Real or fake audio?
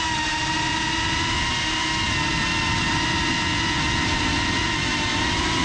real